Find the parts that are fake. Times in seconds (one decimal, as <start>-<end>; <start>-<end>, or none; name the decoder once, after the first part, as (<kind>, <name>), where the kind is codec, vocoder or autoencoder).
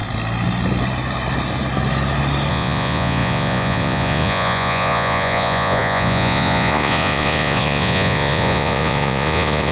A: 2.5-9.7 (vocoder, Vocos)